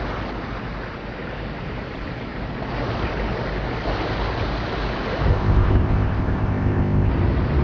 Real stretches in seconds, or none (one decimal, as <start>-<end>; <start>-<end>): 0.0-5.3; 7.1-7.6